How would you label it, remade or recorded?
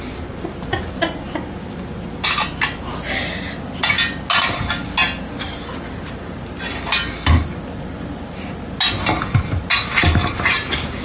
recorded